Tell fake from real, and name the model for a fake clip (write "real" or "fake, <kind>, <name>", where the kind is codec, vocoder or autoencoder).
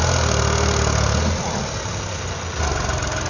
real